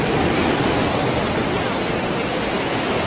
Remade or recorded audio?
recorded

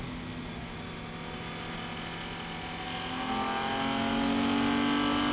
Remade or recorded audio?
recorded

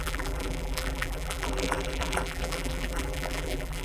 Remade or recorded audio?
remade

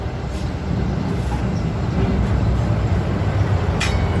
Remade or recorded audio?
remade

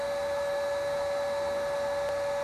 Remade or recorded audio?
recorded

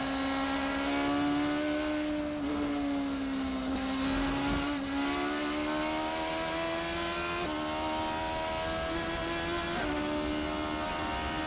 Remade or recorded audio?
recorded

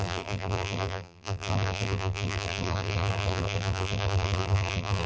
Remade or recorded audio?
remade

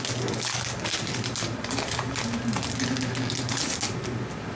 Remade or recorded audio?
recorded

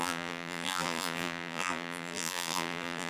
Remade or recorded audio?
remade